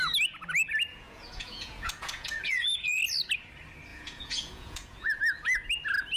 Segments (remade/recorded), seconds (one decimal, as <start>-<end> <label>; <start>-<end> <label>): 0.0-0.9 recorded; 0.9-3.0 remade; 3.0-3.9 recorded; 3.9-5.2 remade; 5.2-6.2 recorded